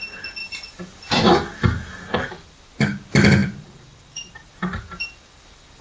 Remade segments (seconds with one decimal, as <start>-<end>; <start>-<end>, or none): 3.4-4.8